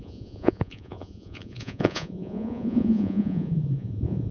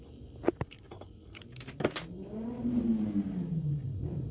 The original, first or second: second